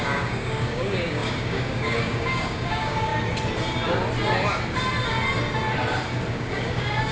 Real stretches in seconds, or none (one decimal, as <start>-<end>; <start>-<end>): 3.1-6.3